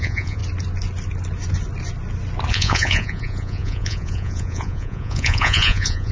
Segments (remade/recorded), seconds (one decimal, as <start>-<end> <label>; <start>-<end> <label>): 0.0-0.4 remade; 0.4-2.5 recorded; 2.5-6.1 remade